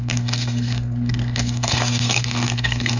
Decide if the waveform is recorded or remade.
remade